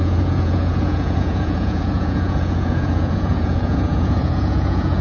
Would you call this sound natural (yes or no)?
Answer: no